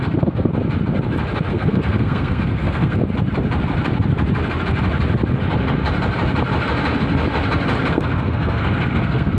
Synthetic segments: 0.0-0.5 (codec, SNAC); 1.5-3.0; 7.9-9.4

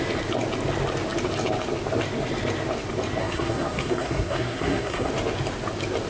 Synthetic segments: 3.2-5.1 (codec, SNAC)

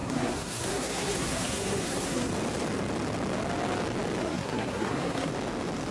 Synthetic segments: 0.0-2.3 (codec, SNAC); 4.2-5.3